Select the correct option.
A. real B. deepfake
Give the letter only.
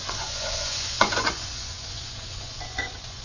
B